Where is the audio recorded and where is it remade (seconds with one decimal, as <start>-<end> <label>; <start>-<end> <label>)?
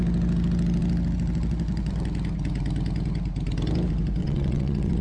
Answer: 0.0-4.2 recorded; 4.2-5.0 remade